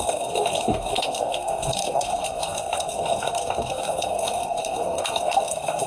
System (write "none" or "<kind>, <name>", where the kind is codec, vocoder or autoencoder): codec, SNAC